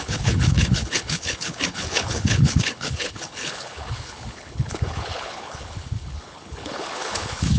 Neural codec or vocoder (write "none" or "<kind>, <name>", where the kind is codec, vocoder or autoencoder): codec, HILCodec